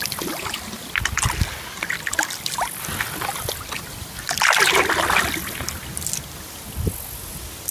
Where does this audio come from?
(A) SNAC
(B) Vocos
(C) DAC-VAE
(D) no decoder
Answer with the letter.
D